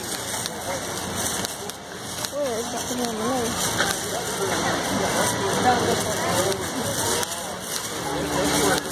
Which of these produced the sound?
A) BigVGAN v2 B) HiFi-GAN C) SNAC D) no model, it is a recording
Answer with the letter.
D